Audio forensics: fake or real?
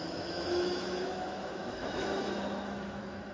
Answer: fake